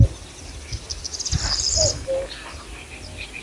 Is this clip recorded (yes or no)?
yes